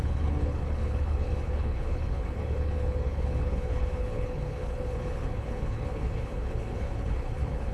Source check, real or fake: fake